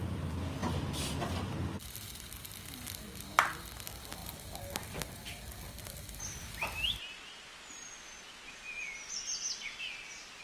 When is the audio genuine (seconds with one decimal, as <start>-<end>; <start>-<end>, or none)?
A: 0.0-10.4